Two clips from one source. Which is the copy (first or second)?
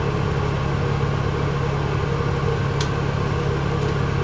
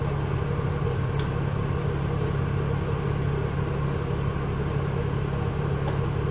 second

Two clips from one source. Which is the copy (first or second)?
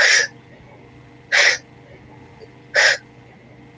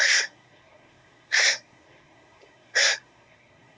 second